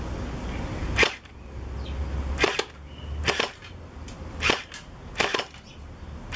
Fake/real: real